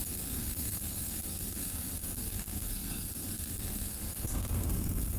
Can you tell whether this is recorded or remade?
remade